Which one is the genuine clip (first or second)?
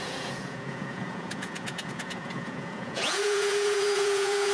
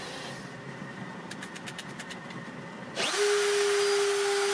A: second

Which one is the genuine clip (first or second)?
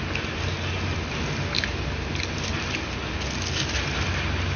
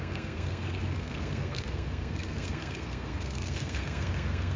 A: first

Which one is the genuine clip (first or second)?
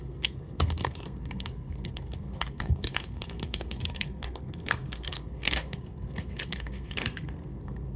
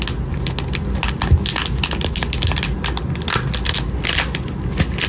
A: second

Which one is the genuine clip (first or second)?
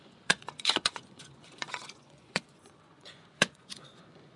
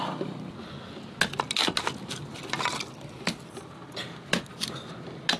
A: second